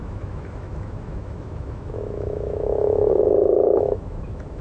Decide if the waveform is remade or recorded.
remade